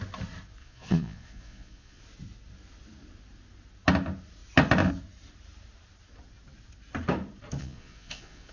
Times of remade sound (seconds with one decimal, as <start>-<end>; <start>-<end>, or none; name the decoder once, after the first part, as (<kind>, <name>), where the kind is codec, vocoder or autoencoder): 0.6-2.0 (vocoder, Vocos); 7.6-8.5